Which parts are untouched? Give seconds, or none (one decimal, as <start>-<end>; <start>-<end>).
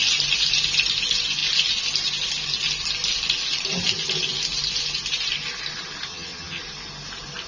0.0-6.1; 6.6-7.5